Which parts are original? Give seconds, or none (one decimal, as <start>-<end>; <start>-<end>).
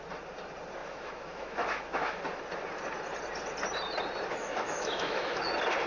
0.0-0.8; 2.2-4.3; 5.4-5.9